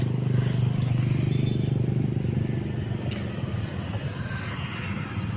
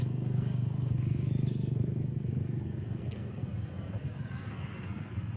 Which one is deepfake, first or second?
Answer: second